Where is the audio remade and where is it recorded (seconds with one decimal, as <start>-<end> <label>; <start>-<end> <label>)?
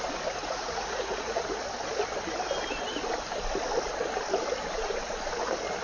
0.0-0.4 recorded; 0.4-1.6 remade; 1.6-5.8 recorded